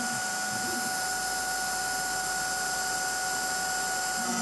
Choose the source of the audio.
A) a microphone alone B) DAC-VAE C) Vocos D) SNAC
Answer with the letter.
A